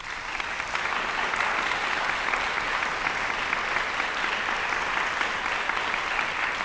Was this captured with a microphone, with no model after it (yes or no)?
yes